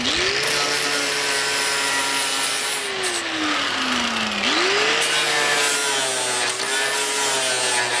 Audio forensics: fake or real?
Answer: real